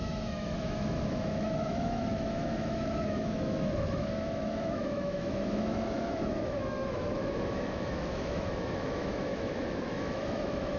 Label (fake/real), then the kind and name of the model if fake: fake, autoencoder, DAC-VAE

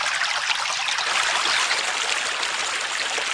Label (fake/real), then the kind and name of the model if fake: real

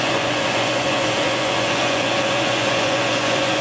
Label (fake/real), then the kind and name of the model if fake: fake, vocoder, Vocos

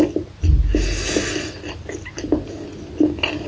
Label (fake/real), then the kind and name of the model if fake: real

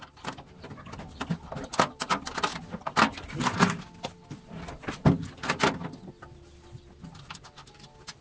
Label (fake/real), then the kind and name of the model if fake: real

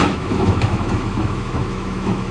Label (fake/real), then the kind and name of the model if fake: fake, autoencoder, DAC-VAE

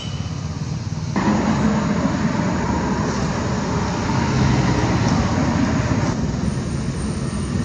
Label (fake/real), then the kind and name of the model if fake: real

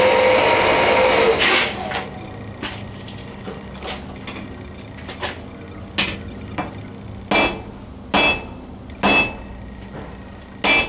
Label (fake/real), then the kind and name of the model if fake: real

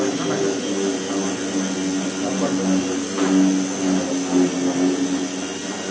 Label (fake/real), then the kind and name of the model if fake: real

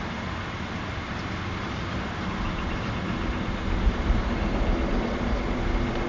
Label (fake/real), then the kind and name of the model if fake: real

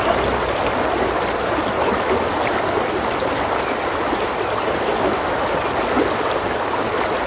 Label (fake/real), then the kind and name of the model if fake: real